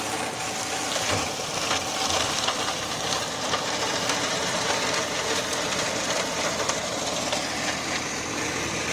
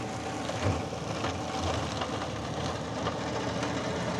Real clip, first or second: second